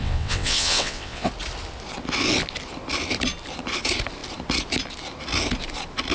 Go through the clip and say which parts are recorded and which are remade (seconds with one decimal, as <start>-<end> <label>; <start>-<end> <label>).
0.0-1.3 remade; 1.3-6.1 recorded